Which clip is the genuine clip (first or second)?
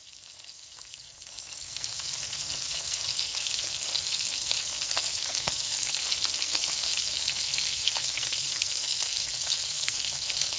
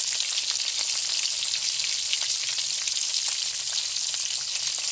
second